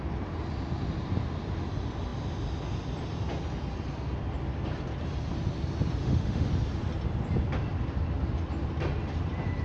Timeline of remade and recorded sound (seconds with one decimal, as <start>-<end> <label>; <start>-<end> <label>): 0.0-6.0 recorded; 6.0-6.5 remade; 6.5-9.6 recorded